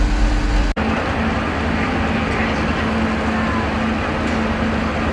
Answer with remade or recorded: recorded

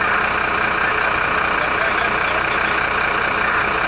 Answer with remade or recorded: recorded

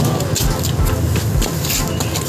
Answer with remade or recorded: recorded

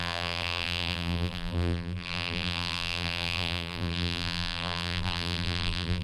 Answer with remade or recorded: remade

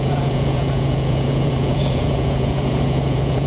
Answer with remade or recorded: remade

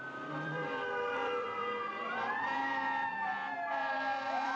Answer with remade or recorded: remade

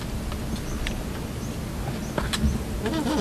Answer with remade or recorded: recorded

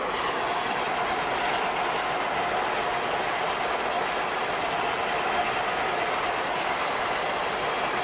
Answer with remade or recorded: recorded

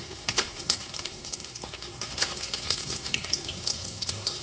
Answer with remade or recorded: remade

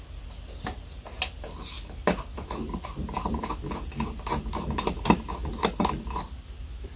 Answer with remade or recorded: recorded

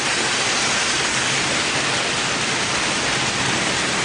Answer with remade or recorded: recorded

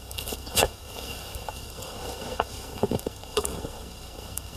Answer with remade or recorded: remade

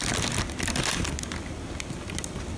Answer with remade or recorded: recorded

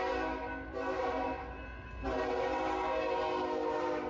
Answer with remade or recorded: recorded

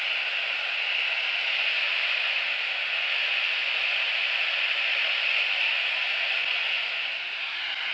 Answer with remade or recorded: recorded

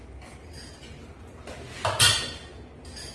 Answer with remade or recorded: recorded